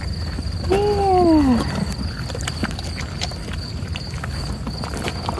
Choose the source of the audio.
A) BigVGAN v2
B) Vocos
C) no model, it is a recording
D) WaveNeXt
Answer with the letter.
C